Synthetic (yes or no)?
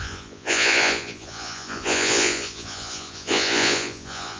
yes